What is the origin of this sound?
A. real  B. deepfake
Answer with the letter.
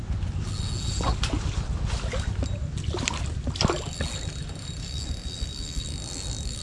A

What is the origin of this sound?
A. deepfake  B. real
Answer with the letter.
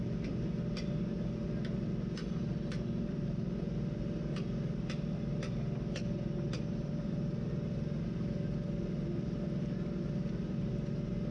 B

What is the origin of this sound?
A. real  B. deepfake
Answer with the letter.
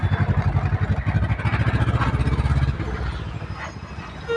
A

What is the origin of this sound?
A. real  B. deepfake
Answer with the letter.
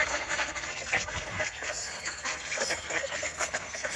B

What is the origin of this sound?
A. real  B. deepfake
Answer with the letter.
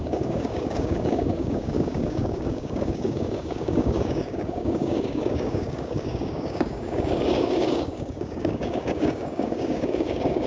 B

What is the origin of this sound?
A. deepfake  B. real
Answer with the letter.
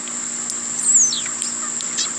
B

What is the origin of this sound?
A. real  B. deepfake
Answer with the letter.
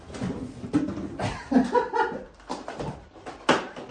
A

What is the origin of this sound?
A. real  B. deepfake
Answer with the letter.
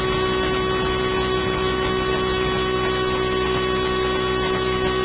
A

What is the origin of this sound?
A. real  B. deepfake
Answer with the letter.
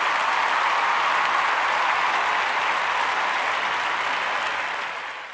A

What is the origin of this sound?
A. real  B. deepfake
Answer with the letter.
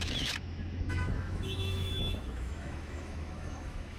B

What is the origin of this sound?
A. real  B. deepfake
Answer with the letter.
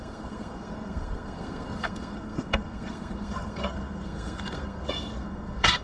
B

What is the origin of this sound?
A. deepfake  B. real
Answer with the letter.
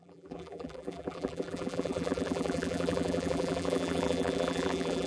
A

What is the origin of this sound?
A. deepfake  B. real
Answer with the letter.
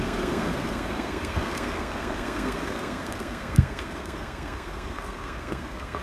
A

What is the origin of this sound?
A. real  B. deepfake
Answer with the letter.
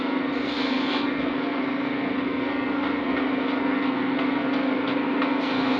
B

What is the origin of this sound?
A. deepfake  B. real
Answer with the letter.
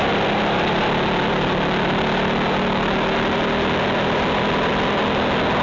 B